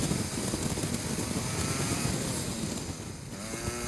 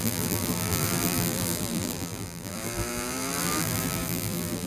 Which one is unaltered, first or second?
first